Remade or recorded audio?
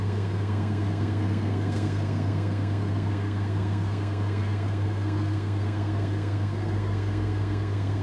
remade